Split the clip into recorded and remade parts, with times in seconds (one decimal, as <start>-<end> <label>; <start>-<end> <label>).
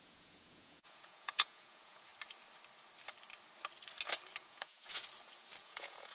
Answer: 0.0-2.1 remade; 2.1-4.4 recorded; 4.4-5.0 remade; 5.0-5.6 recorded; 5.6-6.1 remade